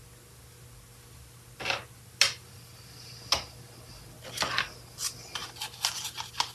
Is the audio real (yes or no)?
yes